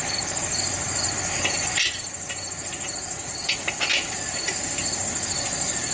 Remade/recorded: recorded